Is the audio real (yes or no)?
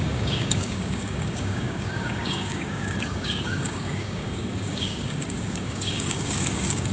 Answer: no